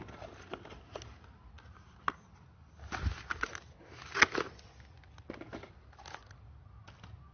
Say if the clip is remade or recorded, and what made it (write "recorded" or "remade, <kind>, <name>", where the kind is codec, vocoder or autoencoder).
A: recorded